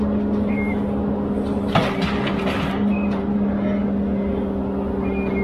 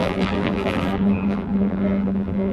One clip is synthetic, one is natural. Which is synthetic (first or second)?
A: second